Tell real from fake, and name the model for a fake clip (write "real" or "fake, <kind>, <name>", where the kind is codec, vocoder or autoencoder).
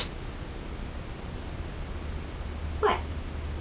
real